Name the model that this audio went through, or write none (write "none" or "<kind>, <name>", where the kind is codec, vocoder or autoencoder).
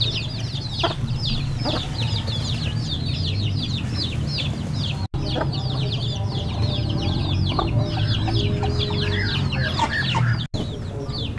none